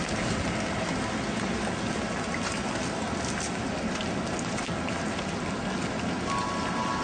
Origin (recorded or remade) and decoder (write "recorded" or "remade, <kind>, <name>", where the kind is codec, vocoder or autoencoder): recorded